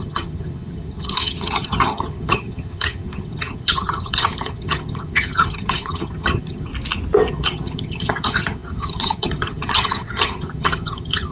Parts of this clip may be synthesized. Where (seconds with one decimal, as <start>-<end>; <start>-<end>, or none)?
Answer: 0.0-6.7; 7.3-11.3